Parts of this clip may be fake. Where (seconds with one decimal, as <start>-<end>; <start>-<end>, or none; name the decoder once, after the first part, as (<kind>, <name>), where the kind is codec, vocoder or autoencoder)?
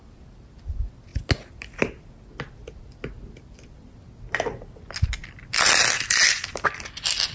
none